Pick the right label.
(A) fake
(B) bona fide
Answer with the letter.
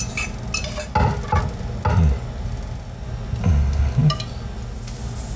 B